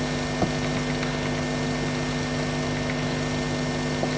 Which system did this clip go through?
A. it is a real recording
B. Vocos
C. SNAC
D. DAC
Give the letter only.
A